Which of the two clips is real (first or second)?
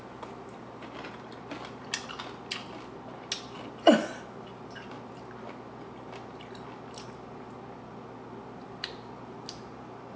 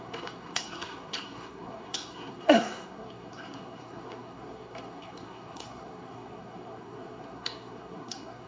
first